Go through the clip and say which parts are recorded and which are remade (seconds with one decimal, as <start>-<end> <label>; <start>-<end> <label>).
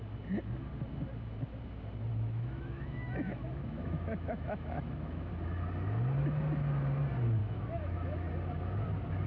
0.0-2.1 recorded; 2.1-5.3 remade; 5.3-7.4 recorded; 7.4-8.3 remade; 8.3-9.3 recorded